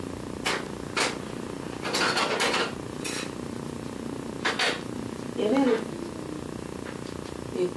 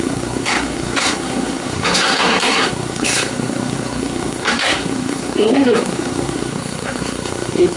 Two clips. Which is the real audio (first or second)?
first